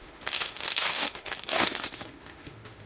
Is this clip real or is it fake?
fake